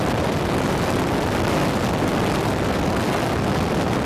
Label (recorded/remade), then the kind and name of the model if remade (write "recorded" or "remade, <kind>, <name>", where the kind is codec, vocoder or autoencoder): recorded